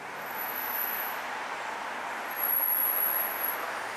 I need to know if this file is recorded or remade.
recorded